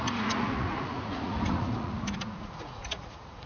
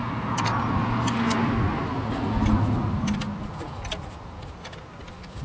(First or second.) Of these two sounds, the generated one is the first